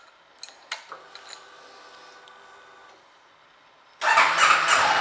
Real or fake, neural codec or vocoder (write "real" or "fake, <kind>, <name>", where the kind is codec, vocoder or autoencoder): real